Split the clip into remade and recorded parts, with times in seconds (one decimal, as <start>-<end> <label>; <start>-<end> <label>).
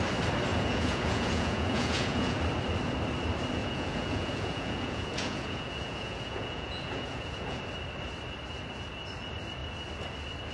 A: 0.0-0.5 recorded; 0.5-2.4 remade; 2.4-3.6 recorded; 3.6-7.6 remade; 7.6-10.5 recorded